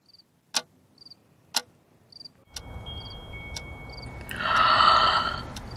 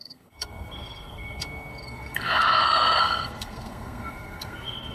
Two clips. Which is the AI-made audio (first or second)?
second